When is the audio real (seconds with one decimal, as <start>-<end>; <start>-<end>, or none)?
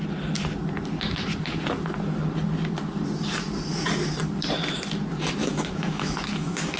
0.0-5.4